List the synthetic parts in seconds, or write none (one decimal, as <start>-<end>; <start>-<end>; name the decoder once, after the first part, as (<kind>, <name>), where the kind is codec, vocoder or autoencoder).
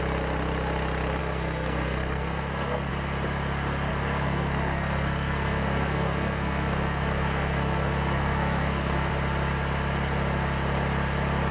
1.2-2.9 (codec, SNAC); 3.9-9.1